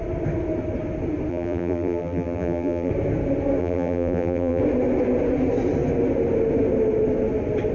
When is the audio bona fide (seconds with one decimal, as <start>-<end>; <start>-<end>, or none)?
0.0-1.3; 2.9-3.6; 4.6-7.7